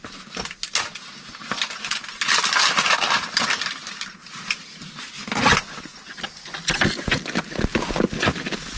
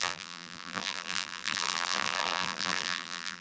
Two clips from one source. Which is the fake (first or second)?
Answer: second